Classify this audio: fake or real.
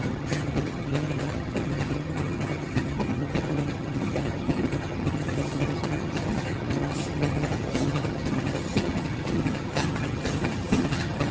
fake